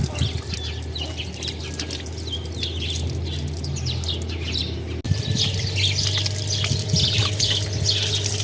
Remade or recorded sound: recorded